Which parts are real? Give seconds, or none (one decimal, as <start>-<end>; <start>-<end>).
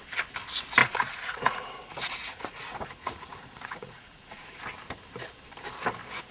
0.0-0.8; 4.6-6.3